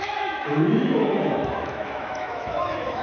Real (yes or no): no